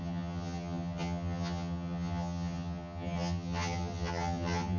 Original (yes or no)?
no